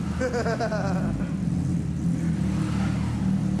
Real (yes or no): yes